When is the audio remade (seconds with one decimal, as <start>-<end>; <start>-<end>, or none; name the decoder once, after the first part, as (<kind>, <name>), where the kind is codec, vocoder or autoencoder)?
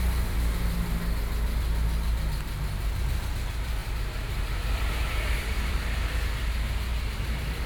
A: 3.8-5.7 (vocoder, BigVGAN v2); 6.9-7.7